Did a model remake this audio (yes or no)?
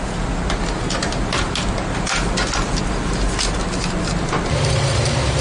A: no